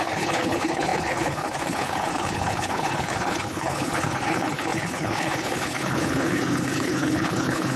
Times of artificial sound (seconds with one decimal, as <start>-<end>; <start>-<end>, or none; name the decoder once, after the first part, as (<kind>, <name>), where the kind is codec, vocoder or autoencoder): 0.0-7.8 (codec, HILCodec)